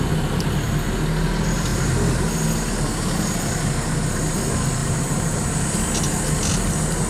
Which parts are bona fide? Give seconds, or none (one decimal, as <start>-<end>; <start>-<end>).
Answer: 0.0-4.8; 5.5-7.1